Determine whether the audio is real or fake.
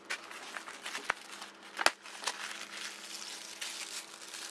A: real